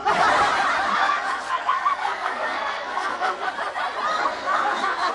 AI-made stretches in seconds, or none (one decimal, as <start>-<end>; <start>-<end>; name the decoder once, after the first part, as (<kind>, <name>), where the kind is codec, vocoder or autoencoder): 1.0-3.5 (codec, SNAC); 4.1-5.1